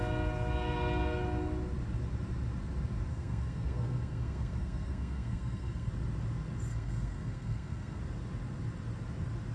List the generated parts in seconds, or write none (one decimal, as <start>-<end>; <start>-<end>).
3.1-5.9; 6.7-8.0